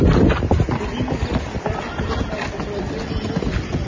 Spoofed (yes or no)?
no